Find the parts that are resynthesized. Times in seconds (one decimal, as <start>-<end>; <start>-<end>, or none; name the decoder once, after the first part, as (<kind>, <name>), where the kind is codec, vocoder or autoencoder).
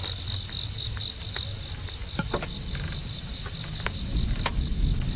none